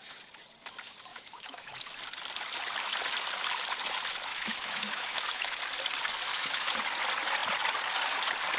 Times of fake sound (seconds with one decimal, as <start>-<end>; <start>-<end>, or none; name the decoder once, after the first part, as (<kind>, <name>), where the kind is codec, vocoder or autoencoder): 1.1-1.8 (autoencoder, DAC-VAE); 4.3-5.6; 6.3-6.8